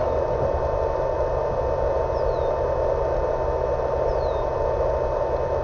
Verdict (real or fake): real